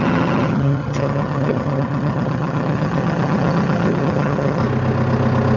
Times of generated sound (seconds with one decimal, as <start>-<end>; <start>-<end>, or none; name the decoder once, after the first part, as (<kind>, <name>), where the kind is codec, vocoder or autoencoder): 0.0-4.6 (vocoder, HiFi-GAN)